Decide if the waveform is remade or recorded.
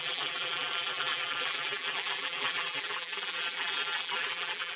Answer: remade